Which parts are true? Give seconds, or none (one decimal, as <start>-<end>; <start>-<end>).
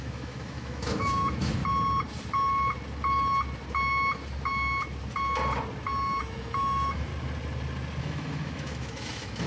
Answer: 1.6-6.2; 7.1-8.0